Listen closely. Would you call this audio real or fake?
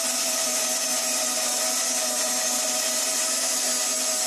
real